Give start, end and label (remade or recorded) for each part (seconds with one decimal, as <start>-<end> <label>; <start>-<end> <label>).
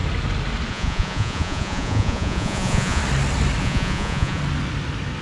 0.0-0.7 recorded; 0.7-3.0 remade; 3.0-3.6 recorded; 3.6-4.4 remade; 4.4-5.2 recorded